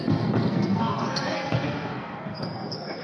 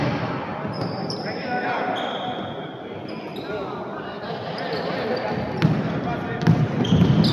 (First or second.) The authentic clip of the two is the second